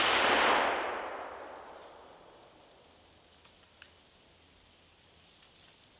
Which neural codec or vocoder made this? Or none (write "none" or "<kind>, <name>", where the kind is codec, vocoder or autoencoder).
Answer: none